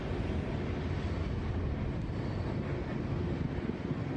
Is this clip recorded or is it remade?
recorded